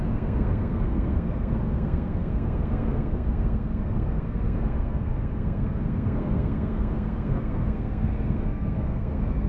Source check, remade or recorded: remade